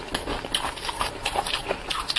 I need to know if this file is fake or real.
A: real